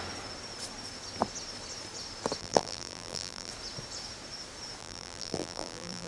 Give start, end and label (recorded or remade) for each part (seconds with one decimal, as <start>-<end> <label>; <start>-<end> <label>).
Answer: 0.0-2.4 recorded; 2.4-3.5 remade; 3.5-4.8 recorded; 4.8-6.1 remade